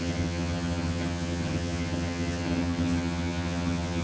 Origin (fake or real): fake